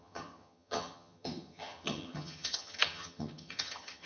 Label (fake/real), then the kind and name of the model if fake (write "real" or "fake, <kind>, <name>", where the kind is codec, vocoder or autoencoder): fake, vocoder, HiFi-GAN